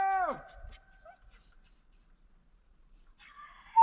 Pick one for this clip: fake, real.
real